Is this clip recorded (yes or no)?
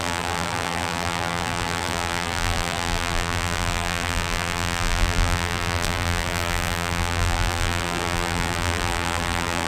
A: no